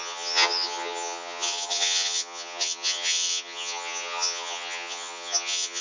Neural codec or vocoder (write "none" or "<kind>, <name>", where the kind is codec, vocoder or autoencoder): vocoder, HiFi-GAN